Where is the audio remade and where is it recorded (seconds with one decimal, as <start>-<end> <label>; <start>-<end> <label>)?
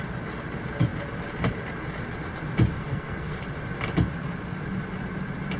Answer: 0.0-2.8 recorded; 2.8-3.4 remade; 3.4-5.6 recorded